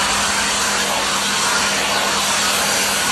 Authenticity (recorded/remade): recorded